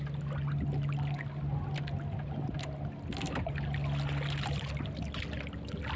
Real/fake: real